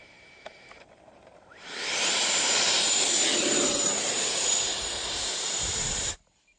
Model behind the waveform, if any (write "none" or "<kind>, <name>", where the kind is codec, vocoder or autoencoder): vocoder, BigVGAN v2